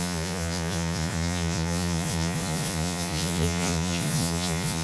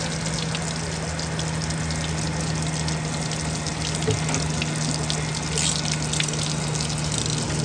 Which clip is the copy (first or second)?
first